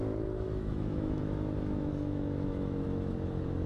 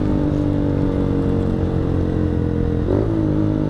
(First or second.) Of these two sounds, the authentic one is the second